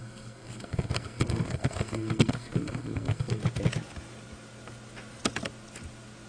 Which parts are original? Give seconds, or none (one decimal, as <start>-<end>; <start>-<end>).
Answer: 3.4-6.3